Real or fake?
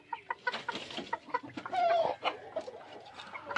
real